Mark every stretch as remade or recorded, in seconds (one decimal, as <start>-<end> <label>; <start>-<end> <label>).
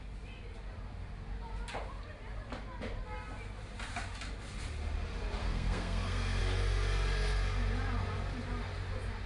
0.0-5.4 recorded; 5.4-6.4 remade; 6.4-9.3 recorded